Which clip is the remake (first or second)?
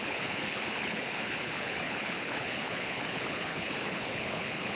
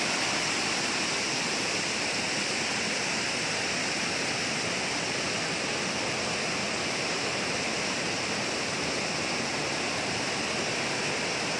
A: first